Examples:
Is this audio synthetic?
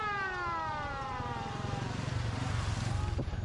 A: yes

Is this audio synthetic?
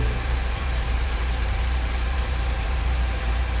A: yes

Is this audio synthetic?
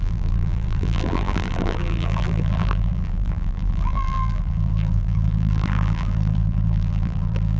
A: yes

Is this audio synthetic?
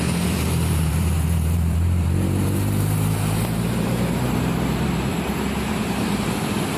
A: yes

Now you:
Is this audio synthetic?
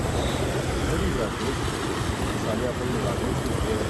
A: no